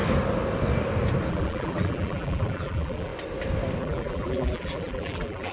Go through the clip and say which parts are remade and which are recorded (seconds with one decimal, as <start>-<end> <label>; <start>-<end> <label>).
0.0-1.3 recorded; 1.3-3.1 remade; 3.1-3.8 recorded; 3.8-5.5 remade